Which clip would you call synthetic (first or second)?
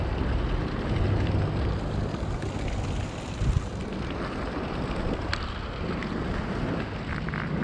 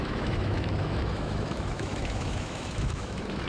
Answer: second